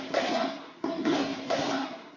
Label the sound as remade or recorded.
remade